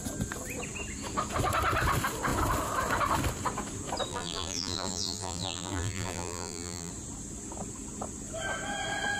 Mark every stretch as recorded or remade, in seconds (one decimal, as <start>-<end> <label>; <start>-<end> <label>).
0.0-4.1 recorded; 4.1-6.9 remade; 6.9-9.2 recorded